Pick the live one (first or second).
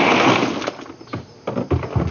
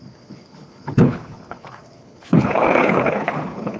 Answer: first